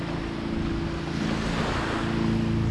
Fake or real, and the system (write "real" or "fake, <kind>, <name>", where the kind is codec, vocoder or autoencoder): real